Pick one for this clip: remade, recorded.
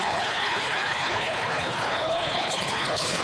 remade